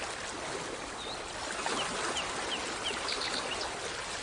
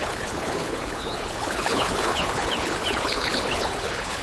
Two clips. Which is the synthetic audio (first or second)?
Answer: second